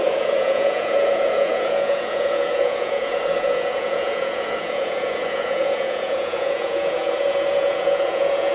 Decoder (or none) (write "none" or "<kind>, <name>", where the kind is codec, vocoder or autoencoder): vocoder, Vocos